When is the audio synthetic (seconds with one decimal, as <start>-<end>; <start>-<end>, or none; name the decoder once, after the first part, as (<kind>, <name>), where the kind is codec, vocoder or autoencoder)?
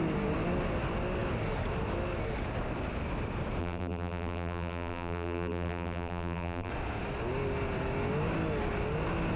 3.6-6.7 (vocoder, BigVGAN v2)